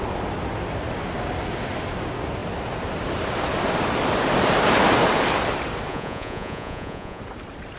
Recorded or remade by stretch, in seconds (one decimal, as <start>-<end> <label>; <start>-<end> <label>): 0.0-5.9 recorded; 5.9-7.2 remade; 7.2-7.8 recorded